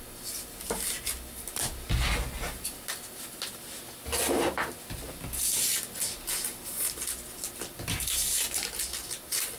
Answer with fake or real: real